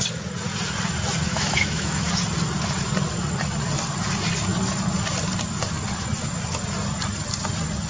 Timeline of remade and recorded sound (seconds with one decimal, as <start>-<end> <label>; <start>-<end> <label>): 0.0-1.3 recorded; 1.3-2.1 remade; 2.1-7.9 recorded